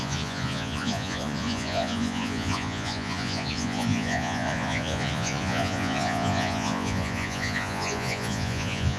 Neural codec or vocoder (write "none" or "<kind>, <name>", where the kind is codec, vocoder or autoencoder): vocoder, Vocos